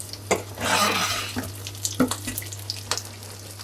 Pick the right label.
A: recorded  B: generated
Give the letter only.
A